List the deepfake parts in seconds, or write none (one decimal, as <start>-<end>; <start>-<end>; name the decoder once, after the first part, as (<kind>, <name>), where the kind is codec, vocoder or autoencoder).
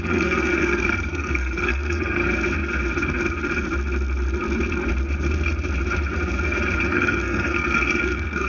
0.0-2.2 (codec, SNAC); 6.9-8.5